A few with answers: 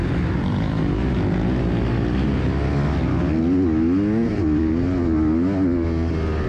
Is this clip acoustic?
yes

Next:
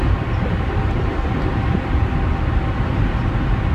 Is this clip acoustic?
yes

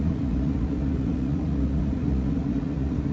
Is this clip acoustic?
no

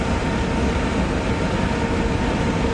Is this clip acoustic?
yes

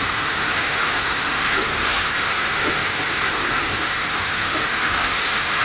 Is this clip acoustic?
no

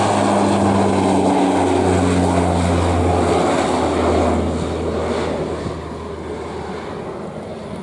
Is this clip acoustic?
yes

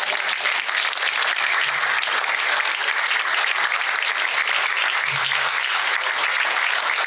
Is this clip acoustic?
yes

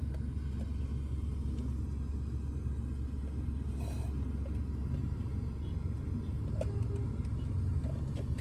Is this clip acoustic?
yes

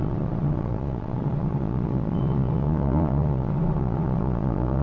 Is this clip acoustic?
no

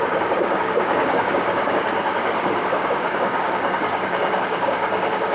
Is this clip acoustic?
no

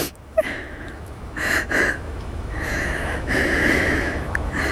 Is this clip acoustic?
no